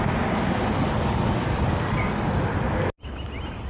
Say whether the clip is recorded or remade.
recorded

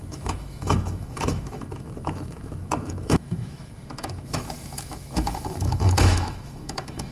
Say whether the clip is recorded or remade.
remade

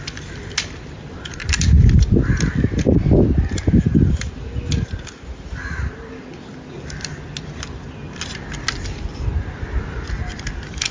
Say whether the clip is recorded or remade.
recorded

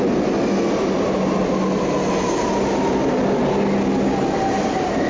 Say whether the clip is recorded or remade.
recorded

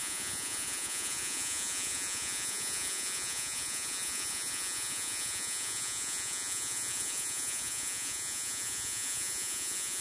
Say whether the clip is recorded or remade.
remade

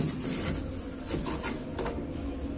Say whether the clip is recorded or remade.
recorded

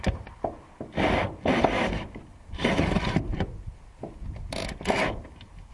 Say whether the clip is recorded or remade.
recorded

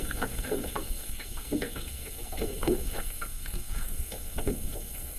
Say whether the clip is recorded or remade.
remade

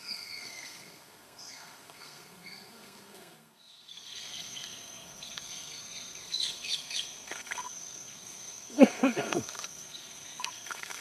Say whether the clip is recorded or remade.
remade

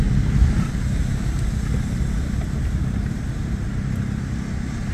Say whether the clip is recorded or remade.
recorded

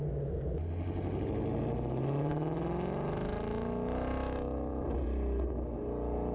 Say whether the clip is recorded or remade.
recorded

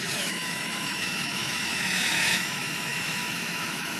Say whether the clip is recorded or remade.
remade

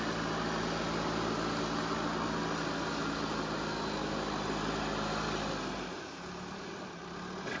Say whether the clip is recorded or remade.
recorded